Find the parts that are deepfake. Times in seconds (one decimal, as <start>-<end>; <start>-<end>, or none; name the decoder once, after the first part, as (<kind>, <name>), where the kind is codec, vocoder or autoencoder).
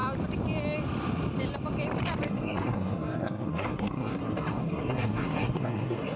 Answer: 2.3-6.2 (codec, SNAC)